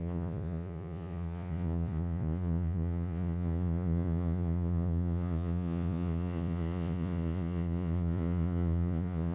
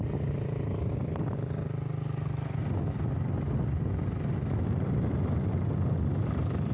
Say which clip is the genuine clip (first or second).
second